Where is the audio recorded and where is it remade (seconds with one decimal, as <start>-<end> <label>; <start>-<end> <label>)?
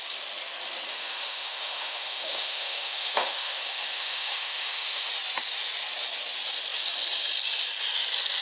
0.0-0.9 recorded; 0.9-5.1 remade; 5.1-8.4 recorded